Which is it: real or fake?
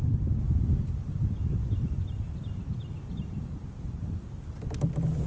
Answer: real